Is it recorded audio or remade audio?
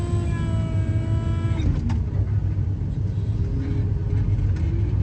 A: recorded